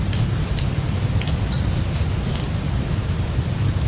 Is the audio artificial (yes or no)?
no